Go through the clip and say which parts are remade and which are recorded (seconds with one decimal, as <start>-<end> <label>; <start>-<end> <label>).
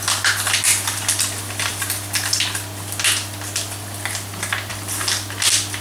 0.0-5.8 recorded